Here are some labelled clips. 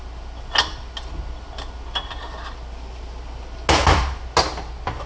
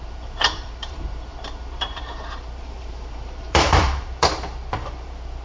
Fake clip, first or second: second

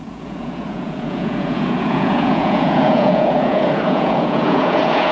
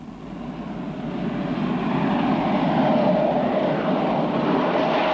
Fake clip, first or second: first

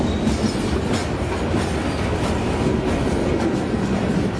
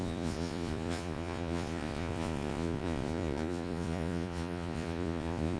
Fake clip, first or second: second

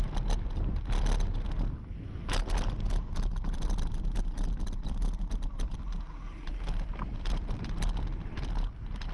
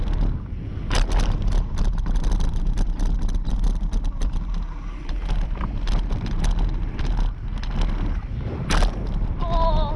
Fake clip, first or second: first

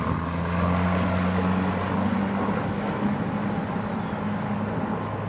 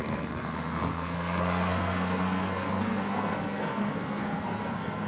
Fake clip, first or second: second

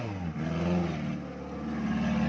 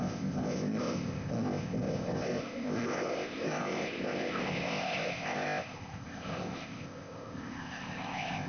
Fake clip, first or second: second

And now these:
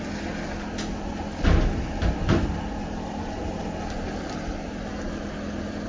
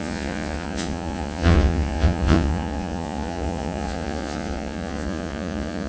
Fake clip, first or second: second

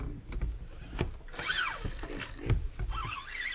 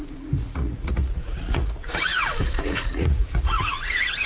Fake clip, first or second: second